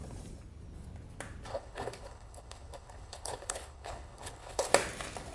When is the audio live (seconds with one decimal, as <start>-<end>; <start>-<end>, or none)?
0.0-1.5; 4.7-5.3